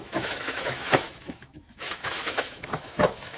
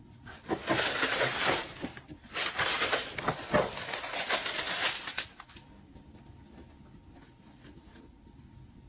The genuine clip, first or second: second